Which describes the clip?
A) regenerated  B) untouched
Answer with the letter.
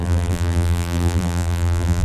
A